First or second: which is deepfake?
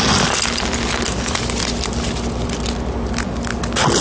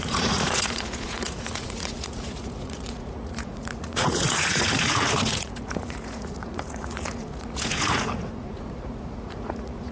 second